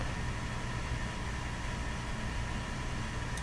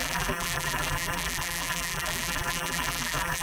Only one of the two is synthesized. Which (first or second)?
second